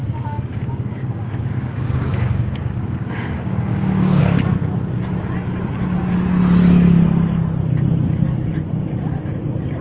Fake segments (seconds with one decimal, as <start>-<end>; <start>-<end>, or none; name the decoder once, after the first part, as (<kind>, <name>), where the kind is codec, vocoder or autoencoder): 0.0-4.2 (codec, DAC)